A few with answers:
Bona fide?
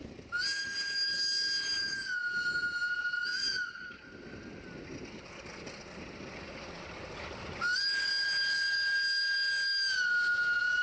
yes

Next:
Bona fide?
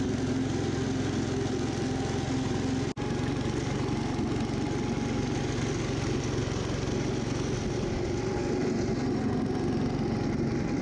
yes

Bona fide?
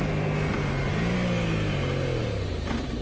yes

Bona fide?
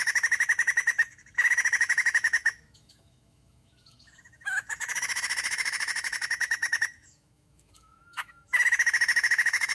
no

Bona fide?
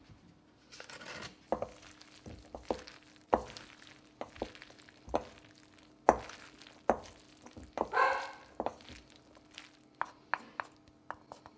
yes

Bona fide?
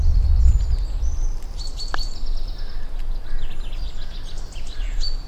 yes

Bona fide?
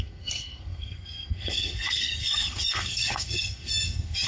no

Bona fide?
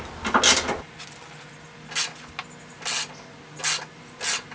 yes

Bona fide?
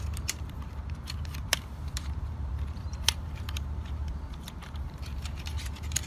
no